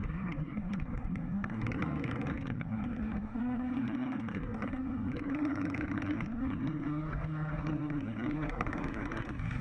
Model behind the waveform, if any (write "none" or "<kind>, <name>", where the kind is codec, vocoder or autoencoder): codec, SNAC